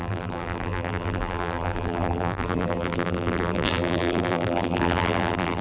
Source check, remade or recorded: remade